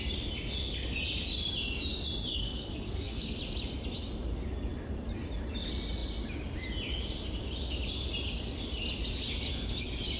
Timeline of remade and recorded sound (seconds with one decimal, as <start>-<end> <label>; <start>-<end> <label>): 0.0-2.3 recorded; 2.3-3.4 remade; 3.4-10.2 recorded

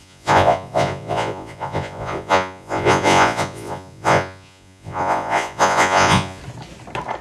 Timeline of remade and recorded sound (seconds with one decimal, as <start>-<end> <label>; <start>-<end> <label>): 0.0-6.4 remade; 6.4-7.2 recorded

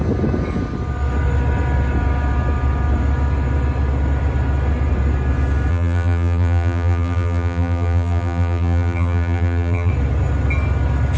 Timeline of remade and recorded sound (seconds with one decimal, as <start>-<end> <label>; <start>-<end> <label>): 0.0-5.7 recorded; 5.7-9.9 remade; 9.9-11.2 recorded